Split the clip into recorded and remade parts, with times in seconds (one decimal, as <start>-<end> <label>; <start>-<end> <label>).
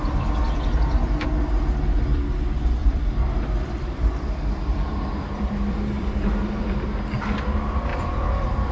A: 0.0-2.8 recorded; 2.8-6.7 remade; 6.7-8.7 recorded